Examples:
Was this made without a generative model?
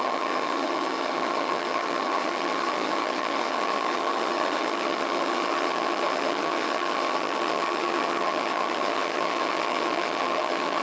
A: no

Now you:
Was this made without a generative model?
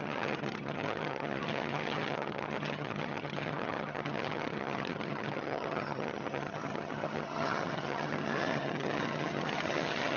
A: no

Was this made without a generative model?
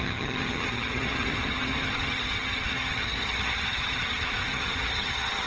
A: no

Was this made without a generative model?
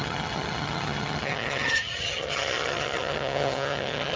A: no